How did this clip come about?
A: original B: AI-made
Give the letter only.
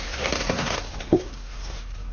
B